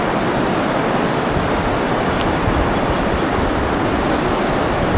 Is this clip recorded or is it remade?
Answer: recorded